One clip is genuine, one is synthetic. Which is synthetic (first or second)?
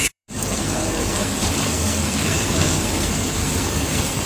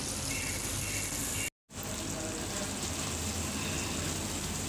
first